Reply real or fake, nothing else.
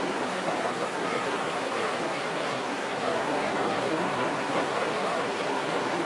fake